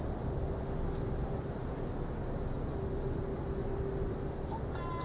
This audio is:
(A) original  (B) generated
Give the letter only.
A